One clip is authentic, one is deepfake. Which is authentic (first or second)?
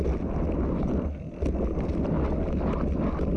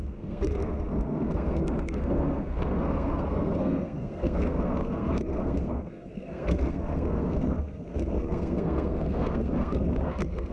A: first